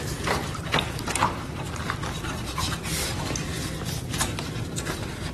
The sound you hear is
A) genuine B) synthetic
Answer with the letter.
B